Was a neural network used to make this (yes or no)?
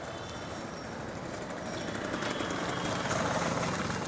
no